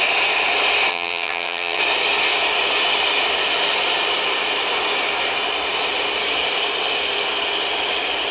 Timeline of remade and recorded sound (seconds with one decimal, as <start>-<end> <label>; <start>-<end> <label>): 0.0-0.9 recorded; 0.9-1.8 remade; 1.8-8.3 recorded

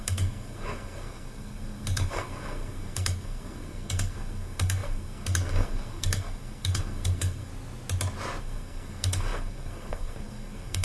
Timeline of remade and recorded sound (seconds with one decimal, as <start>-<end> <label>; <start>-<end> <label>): 0.0-7.5 remade; 7.5-8.4 recorded; 8.4-10.8 remade